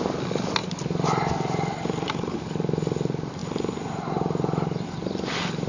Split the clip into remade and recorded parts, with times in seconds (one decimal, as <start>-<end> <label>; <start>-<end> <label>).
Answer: 0.0-5.7 recorded